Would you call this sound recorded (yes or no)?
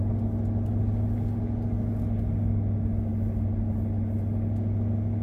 yes